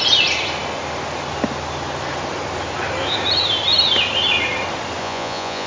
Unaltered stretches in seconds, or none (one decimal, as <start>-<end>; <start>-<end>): 0.0-5.0